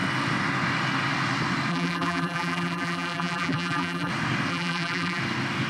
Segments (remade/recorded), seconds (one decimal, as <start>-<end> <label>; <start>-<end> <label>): 0.0-1.7 recorded; 1.7-4.1 remade; 4.1-4.5 recorded; 4.5-5.2 remade; 5.2-5.7 recorded